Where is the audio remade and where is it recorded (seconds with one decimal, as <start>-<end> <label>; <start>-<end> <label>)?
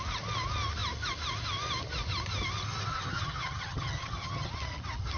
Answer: 0.0-2.9 recorded; 2.9-4.5 remade; 4.5-5.2 recorded